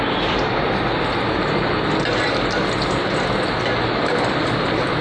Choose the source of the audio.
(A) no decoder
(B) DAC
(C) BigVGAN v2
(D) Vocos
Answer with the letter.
A